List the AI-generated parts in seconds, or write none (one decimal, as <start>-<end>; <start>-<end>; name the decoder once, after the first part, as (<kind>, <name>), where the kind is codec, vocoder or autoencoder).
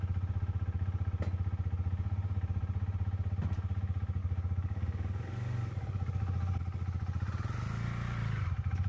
4.2-6.6 (codec, DAC)